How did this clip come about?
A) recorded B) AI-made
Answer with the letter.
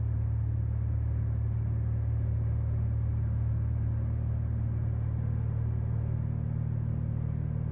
A